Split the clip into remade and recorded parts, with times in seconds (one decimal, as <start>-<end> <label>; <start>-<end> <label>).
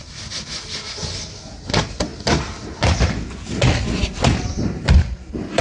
0.0-5.6 recorded